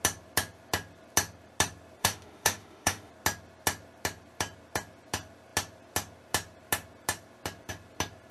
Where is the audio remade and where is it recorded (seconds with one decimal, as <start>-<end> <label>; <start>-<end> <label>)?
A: 0.0-2.0 recorded; 2.0-3.1 remade; 3.1-8.3 recorded